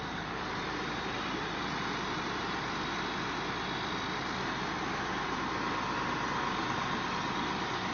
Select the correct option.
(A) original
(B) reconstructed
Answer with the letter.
A